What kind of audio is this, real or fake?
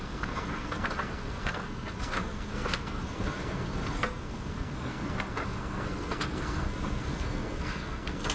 fake